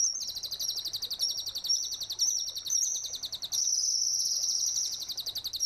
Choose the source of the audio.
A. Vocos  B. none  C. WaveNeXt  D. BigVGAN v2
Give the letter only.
B